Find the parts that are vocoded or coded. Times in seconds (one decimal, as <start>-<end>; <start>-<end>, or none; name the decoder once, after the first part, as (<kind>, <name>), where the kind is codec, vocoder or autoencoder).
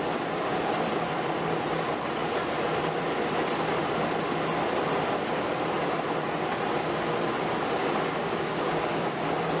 7.8-9.2 (codec, DAC)